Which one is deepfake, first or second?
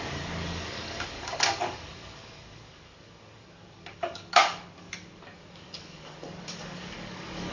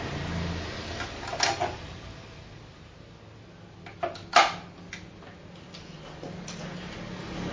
first